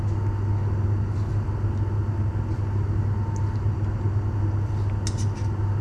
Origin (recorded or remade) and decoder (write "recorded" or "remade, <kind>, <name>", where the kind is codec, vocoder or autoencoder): recorded